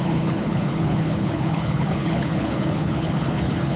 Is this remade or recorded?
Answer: remade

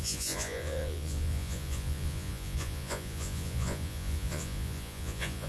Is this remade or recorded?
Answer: remade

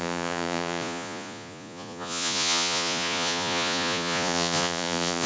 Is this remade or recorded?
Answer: remade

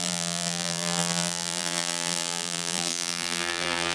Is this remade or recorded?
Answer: remade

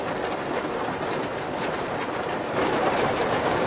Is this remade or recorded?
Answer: remade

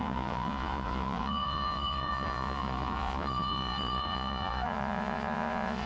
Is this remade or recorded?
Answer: remade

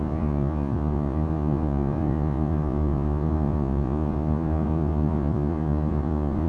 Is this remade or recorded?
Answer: remade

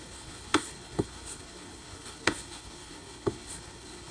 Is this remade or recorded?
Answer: remade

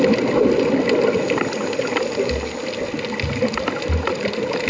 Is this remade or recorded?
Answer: recorded